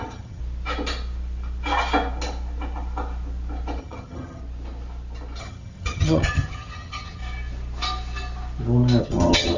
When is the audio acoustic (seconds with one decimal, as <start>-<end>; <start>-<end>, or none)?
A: 0.4-3.8; 4.4-5.4; 7.2-9.0

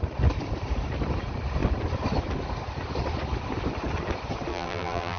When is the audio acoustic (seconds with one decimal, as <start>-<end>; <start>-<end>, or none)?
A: 0.0-4.5

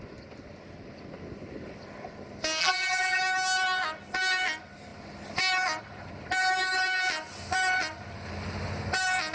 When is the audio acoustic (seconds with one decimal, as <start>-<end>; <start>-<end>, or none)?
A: 0.0-2.6; 3.2-9.3

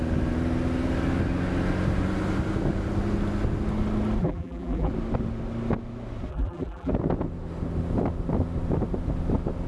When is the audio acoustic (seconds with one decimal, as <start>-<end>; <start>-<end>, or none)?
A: 0.0-4.2; 4.9-6.3; 6.9-9.7

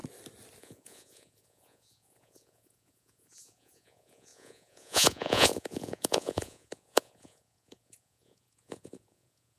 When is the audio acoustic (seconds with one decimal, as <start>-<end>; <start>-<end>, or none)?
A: 0.0-0.6

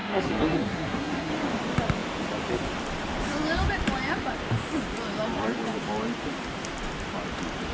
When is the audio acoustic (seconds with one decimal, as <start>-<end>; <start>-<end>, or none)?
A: 1.3-7.7